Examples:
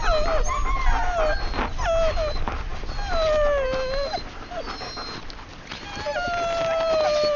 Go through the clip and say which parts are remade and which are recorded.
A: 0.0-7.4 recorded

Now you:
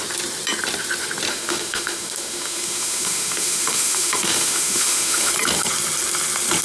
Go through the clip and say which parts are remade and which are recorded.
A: 0.0-1.3 recorded; 1.3-5.3 remade; 5.3-6.6 recorded

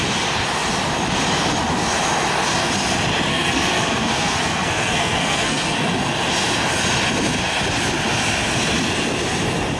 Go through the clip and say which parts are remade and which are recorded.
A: 0.0-3.3 recorded; 3.3-5.9 remade; 5.9-9.8 recorded

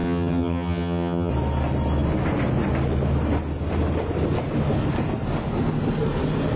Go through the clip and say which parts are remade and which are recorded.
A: 0.0-1.3 remade; 1.3-6.6 recorded

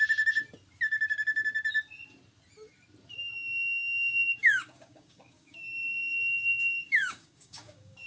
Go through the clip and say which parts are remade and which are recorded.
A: 0.0-4.4 recorded; 4.4-8.1 remade

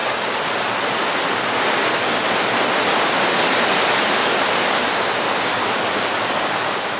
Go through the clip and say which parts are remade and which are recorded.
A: 0.0-7.0 recorded

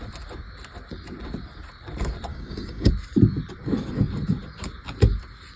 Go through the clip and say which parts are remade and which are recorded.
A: 0.0-2.3 recorded; 2.3-2.9 remade; 2.9-5.6 recorded